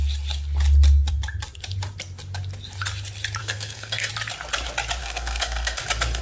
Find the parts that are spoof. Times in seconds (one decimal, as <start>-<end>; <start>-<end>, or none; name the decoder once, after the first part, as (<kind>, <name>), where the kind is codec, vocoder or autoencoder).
3.4-4.1 (codec, SNAC); 5.0-5.8